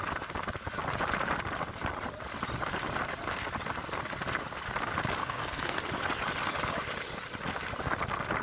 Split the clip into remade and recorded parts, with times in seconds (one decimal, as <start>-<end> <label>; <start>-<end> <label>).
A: 0.0-5.2 recorded; 5.2-5.8 remade; 5.8-8.4 recorded